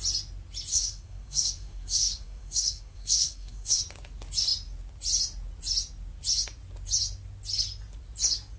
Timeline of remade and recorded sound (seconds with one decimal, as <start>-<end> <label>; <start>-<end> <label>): 0.0-0.7 recorded; 0.7-3.8 remade; 3.8-8.6 recorded